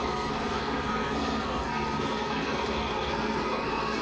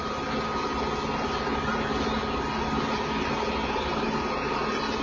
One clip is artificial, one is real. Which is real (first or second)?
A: second